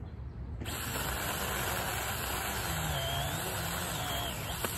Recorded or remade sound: recorded